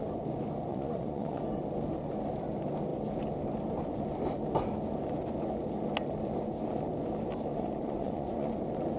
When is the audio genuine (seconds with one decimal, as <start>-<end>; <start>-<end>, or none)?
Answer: 0.0-0.7; 1.4-7.5; 8.5-9.0